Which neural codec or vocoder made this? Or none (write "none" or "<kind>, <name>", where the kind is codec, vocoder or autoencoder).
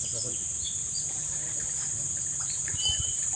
vocoder, BigVGAN v2